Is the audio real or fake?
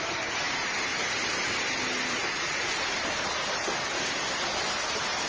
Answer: real